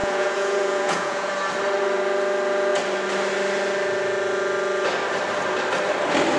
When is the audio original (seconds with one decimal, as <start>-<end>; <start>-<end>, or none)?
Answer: 1.3-6.4